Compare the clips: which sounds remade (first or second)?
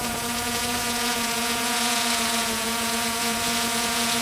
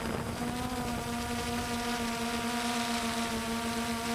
first